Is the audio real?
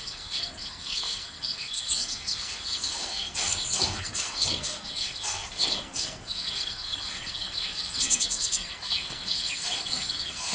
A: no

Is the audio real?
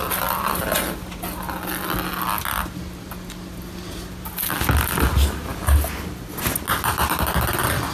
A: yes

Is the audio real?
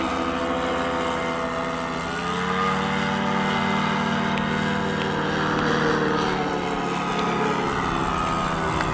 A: yes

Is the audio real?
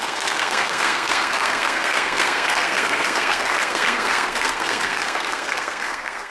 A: no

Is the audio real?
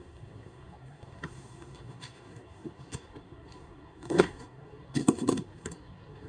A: no